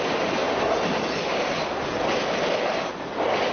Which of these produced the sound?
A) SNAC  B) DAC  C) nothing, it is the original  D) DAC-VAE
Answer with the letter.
C